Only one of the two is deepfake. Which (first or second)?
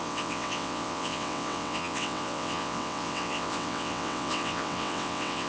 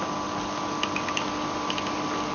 first